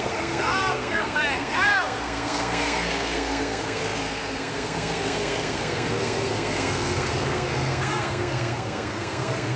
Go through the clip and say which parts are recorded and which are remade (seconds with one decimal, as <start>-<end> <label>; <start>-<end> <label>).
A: 0.0-9.6 remade